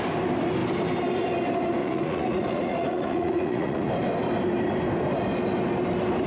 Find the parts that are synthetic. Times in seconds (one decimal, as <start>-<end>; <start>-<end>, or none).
1.8-3.9